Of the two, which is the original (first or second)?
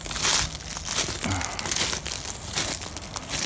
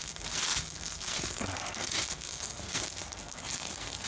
first